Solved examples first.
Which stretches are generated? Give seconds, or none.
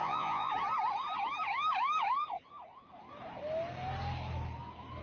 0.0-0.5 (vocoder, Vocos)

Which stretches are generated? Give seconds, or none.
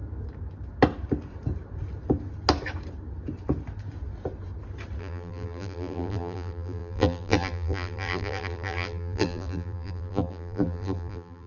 5.0-11.5 (vocoder, BigVGAN v2)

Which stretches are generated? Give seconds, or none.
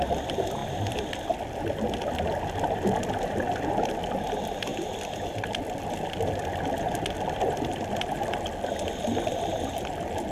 none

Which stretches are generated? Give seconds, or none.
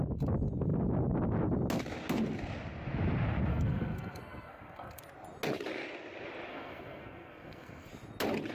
3.5-5.0 (codec, SNAC); 6.5-7.9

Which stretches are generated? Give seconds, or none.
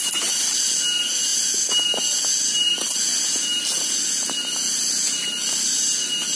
none